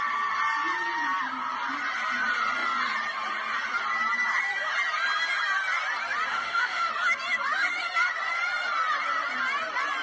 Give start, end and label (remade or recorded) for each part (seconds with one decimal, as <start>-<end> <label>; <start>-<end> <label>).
0.0-6.3 recorded; 6.3-6.9 remade; 6.9-10.0 recorded